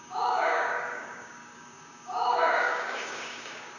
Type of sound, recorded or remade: remade